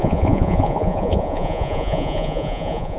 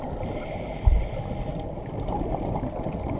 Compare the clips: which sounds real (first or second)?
second